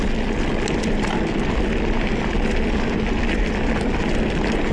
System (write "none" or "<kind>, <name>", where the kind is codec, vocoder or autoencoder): none